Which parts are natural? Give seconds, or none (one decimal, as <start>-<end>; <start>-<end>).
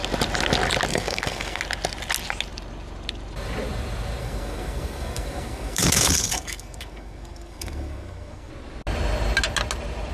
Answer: 0.0-0.9; 1.6-4.2; 8.5-10.1